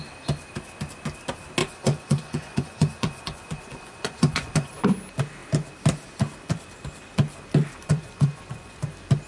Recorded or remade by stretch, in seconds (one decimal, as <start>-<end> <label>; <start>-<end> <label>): 0.0-1.6 recorded; 1.6-4.8 remade; 4.8-7.8 recorded; 7.8-8.8 remade; 8.8-9.3 recorded